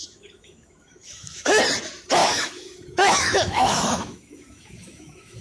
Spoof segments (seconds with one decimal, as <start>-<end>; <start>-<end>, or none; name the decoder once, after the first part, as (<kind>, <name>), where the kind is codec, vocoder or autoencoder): 0.0-1.6 (autoencoder, DAC-VAE); 2.2-5.4